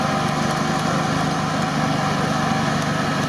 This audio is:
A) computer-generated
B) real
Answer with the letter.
B